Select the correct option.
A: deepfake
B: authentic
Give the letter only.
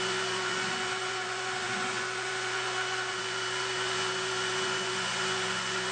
A